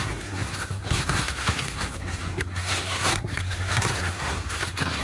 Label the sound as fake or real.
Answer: fake